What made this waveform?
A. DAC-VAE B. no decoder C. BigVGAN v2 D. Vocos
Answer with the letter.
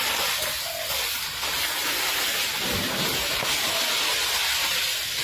B